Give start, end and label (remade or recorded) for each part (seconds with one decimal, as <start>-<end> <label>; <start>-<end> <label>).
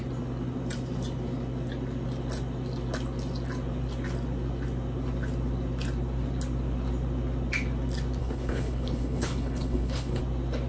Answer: 0.0-8.2 recorded; 8.2-10.2 remade; 10.2-10.7 recorded